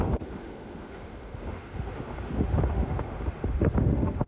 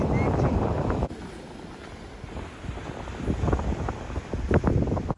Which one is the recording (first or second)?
second